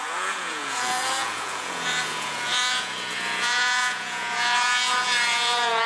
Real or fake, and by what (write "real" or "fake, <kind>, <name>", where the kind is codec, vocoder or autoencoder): fake, vocoder, Vocos